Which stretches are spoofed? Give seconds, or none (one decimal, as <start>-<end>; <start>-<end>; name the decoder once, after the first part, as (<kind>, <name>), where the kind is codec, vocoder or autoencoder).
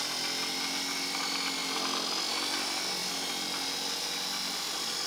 none